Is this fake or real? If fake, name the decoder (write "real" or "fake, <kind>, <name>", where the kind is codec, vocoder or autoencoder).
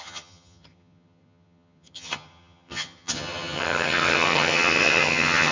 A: fake, vocoder, HiFi-GAN